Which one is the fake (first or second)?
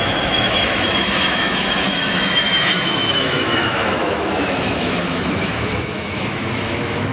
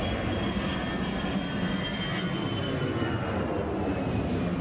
first